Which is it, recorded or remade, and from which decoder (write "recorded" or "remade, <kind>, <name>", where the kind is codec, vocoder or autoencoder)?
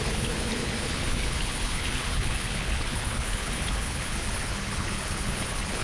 remade, codec, HILCodec